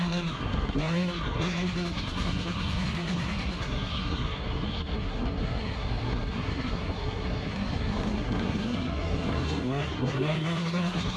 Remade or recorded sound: remade